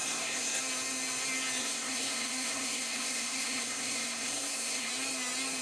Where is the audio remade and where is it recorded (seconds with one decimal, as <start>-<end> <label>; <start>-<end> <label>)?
0.0-0.6 remade; 0.6-1.6 recorded; 1.6-4.9 remade; 4.9-5.6 recorded